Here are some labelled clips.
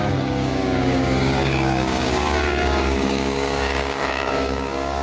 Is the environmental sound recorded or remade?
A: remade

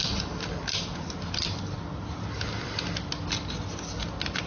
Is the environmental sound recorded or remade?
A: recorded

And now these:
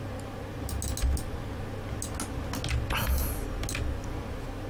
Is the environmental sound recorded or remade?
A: recorded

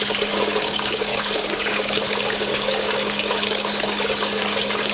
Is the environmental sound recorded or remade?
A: remade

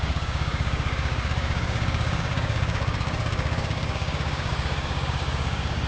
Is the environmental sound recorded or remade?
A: remade